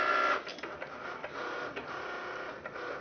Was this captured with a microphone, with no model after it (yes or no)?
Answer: yes